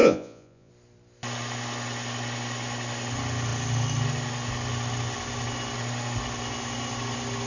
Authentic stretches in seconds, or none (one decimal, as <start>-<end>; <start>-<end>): 0.7-7.5